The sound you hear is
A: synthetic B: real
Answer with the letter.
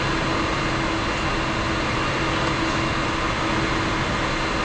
B